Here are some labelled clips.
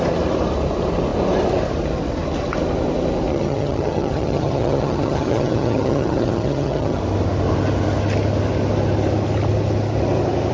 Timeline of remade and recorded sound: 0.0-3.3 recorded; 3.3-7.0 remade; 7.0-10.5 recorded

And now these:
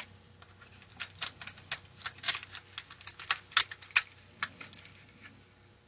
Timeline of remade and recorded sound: 0.0-5.9 recorded

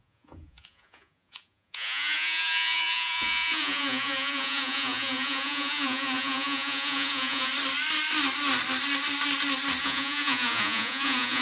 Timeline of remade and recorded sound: 0.0-7.5 remade; 7.5-9.8 recorded; 9.8-11.4 remade